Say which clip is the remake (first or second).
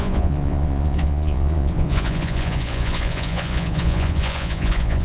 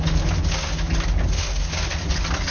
first